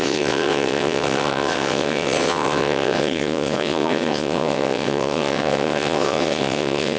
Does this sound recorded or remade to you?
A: remade